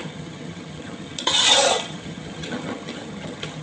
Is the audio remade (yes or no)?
yes